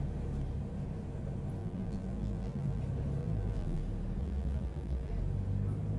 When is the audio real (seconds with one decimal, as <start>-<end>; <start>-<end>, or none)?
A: 0.0-1.6; 2.8-3.2; 3.8-4.2; 5.1-6.0